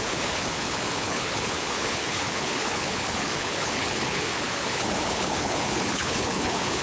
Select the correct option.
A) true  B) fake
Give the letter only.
B